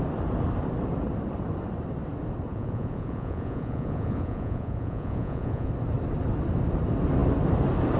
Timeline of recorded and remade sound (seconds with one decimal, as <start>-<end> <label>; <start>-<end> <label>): 0.0-2.5 recorded; 2.5-5.7 remade; 5.7-8.0 recorded